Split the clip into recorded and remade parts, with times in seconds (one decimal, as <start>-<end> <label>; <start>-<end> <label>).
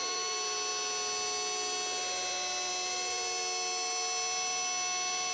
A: 0.0-5.3 recorded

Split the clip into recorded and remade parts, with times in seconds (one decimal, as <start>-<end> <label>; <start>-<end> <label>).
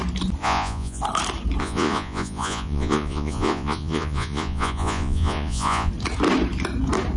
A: 0.0-0.4 recorded; 0.4-1.0 remade; 1.0-1.6 recorded; 1.6-5.9 remade; 5.9-7.2 recorded